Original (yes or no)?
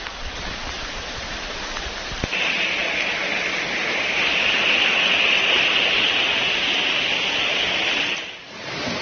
yes